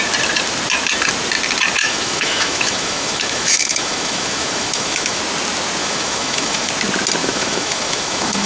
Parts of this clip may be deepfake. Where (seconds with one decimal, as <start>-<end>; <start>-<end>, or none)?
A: 1.8-5.2; 5.8-6.7; 7.2-8.5